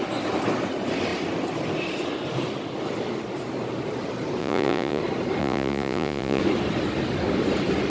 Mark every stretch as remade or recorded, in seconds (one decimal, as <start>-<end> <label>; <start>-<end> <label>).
0.0-4.4 recorded; 4.4-5.0 remade; 5.0-5.4 recorded; 5.4-6.4 remade; 6.4-7.9 recorded